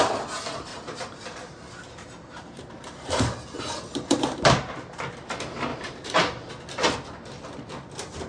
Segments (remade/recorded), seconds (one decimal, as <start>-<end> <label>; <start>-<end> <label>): 0.0-0.7 recorded; 0.7-3.6 remade; 3.6-5.7 recorded; 5.7-6.5 remade; 6.5-8.3 recorded